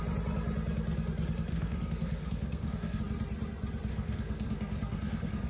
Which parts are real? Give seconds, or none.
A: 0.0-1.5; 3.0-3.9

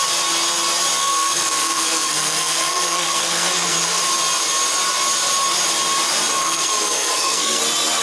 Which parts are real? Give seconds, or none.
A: 0.0-1.0; 4.0-6.4; 7.6-8.0

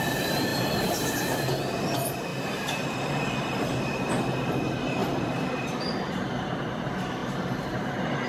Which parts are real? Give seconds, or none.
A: 0.0-0.5; 1.2-5.0; 6.3-7.2; 7.9-8.3

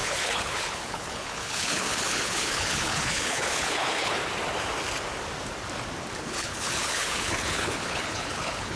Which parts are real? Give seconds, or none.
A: 4.2-6.2

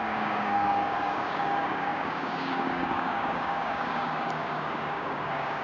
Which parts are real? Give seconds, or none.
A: none